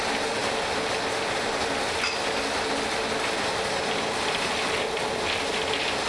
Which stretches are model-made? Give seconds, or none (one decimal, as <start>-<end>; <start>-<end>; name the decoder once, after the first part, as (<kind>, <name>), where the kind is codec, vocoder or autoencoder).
none